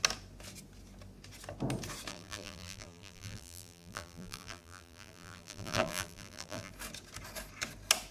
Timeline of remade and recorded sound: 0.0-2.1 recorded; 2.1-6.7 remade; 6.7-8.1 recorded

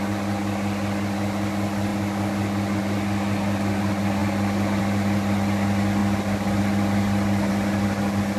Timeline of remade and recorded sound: 0.0-8.4 recorded